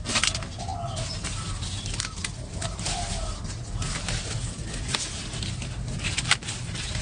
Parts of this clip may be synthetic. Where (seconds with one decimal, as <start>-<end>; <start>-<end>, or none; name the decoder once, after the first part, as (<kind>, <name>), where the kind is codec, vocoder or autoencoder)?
none